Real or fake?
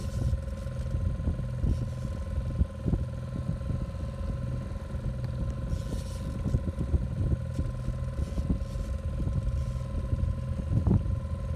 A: real